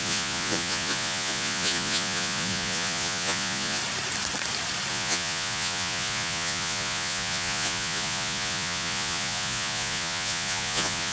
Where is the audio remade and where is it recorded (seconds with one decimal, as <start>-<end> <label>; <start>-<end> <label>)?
0.0-3.8 remade; 3.8-4.9 recorded; 4.9-11.1 remade